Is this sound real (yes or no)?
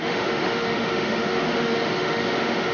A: no